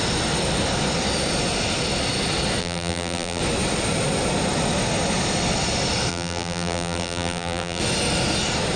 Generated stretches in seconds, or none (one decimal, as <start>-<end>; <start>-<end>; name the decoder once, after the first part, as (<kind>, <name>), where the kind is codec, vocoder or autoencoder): 2.6-3.4 (vocoder, BigVGAN v2); 6.1-7.8